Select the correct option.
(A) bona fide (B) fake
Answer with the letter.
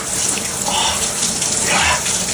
A